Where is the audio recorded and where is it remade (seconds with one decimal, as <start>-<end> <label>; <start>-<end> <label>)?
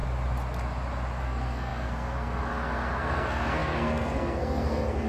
0.0-1.2 recorded; 1.2-5.1 remade